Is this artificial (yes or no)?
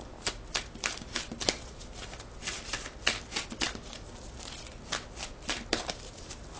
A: no